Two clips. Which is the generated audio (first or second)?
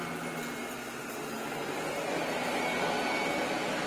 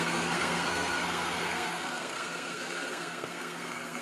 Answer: second